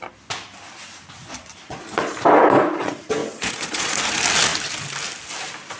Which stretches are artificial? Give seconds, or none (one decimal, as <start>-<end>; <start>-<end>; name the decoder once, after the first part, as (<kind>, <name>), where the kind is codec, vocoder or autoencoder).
1.2-2.1 (vocoder, Vocos); 3.2-4.0